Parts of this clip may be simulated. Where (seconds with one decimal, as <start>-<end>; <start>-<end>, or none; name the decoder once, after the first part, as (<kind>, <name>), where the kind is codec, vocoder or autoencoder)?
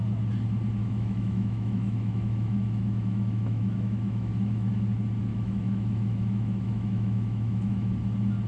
0.8-4.7 (autoencoder, DAC-VAE); 5.3-7.9